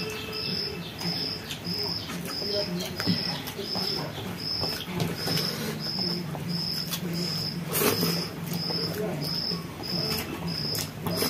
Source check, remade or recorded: remade